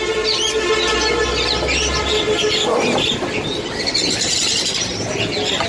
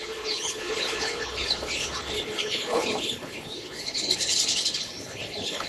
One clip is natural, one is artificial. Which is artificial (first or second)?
second